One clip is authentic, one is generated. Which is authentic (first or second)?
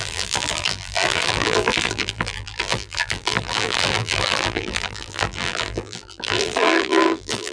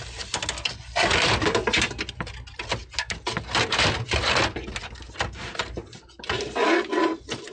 second